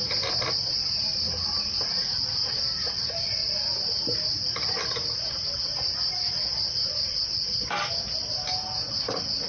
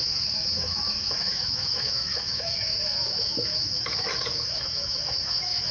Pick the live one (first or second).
first